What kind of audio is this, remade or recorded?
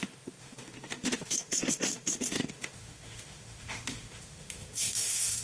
remade